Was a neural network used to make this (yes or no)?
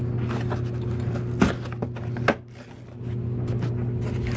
no